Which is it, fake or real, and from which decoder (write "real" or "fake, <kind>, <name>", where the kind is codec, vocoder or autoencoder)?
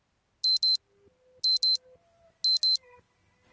real